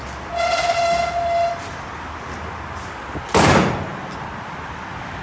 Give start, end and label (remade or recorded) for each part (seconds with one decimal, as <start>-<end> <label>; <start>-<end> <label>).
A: 0.0-5.2 recorded